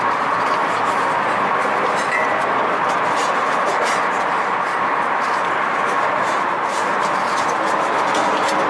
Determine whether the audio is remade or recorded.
recorded